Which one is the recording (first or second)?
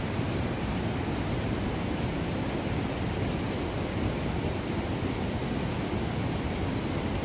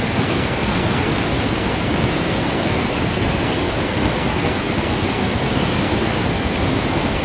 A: first